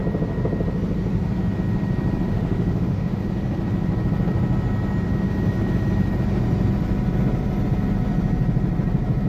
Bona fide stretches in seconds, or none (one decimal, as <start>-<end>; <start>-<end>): 0.0-2.3; 3.2-9.3